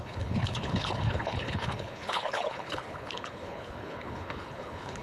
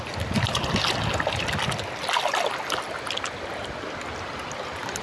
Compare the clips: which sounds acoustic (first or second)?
second